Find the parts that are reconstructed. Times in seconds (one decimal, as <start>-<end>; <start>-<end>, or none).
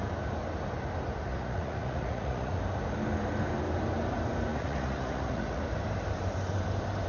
1.3-2.6; 4.5-5.6